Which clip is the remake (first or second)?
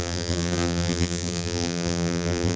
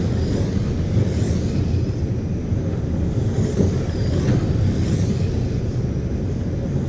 first